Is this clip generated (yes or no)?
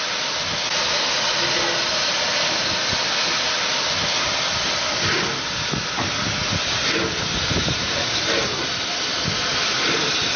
no